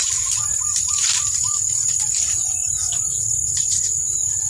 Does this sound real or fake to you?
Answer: real